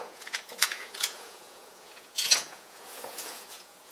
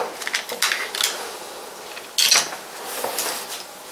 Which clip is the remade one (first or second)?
first